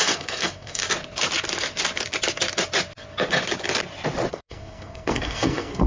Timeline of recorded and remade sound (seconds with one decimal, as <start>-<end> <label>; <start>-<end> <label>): 0.0-0.8 remade; 0.8-4.3 recorded; 4.3-5.9 remade